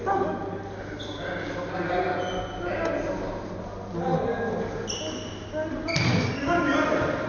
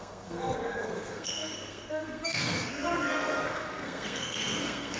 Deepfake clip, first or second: second